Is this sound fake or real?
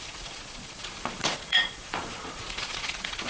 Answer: fake